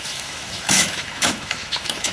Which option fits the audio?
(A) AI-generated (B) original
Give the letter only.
A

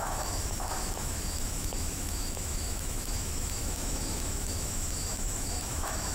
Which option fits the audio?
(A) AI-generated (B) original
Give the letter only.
A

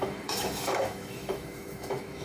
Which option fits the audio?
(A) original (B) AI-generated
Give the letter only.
B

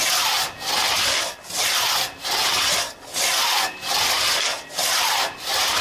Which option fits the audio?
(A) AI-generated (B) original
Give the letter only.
B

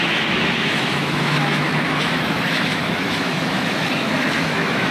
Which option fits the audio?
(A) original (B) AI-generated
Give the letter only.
B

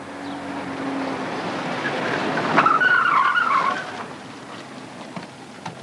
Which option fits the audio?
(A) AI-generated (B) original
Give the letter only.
B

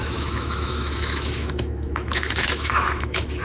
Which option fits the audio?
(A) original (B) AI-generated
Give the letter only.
B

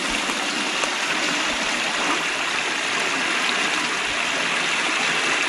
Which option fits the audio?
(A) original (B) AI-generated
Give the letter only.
A